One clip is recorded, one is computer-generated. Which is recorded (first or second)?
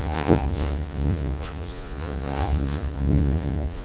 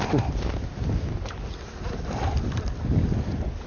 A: second